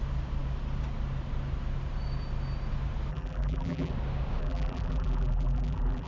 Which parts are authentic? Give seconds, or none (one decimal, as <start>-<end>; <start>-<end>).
0.0-3.1; 3.9-4.4